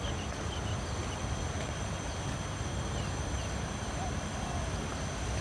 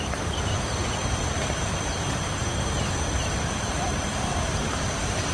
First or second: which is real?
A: first